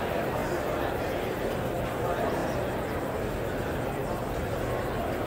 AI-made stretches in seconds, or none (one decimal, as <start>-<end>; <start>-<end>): none